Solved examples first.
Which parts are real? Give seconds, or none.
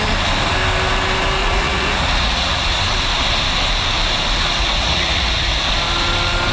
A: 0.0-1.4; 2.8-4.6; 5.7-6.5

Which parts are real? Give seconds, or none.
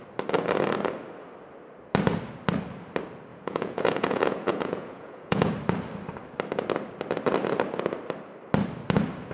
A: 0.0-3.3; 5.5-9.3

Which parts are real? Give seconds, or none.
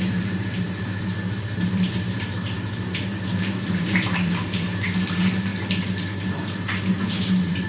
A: 5.5-6.2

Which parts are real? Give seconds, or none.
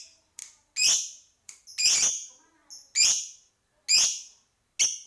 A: 0.0-5.1